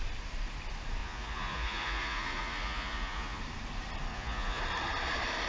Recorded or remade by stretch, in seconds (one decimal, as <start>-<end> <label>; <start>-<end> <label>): 0.0-1.0 recorded; 1.0-3.4 remade; 3.4-4.1 recorded; 4.1-4.6 remade; 4.6-5.5 recorded